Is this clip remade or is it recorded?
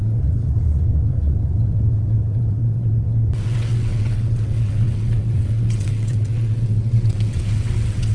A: remade